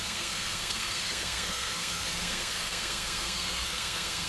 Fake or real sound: fake